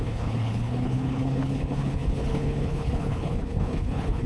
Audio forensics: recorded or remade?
remade